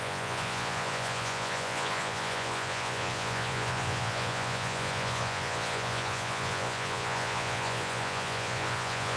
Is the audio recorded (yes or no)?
no